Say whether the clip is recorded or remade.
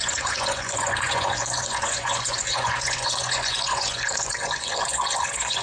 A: remade